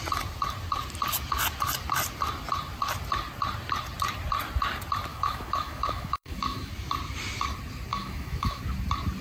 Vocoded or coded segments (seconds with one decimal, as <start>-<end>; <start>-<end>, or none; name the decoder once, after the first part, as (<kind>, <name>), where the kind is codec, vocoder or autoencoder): 5.1-6.7 (autoencoder, DAC-VAE); 7.9-8.6